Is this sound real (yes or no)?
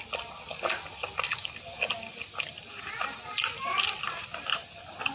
yes